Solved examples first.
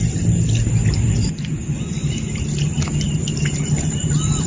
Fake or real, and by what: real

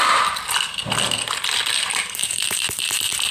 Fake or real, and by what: real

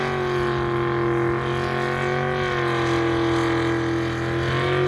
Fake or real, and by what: real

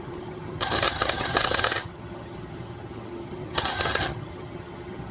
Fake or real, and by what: fake, vocoder, HiFi-GAN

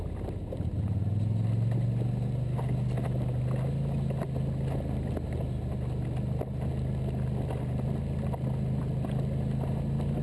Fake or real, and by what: real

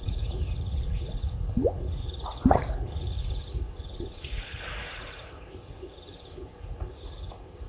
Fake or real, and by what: fake, vocoder, Vocos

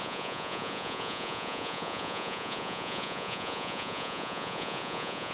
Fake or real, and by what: fake, vocoder, Vocos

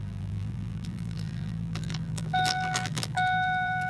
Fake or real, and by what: fake, vocoder, BigVGAN v2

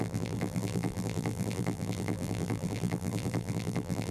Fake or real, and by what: fake, vocoder, BigVGAN v2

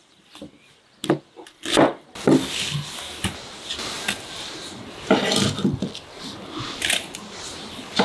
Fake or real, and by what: real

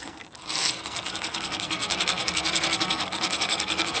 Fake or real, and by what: fake, codec, SNAC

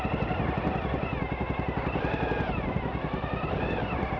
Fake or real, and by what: real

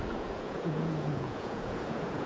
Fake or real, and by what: fake, vocoder, Vocos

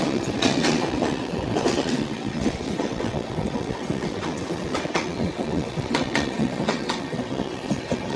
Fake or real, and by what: fake, vocoder, WaveNeXt